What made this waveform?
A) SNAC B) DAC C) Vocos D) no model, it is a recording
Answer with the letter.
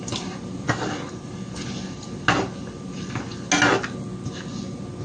D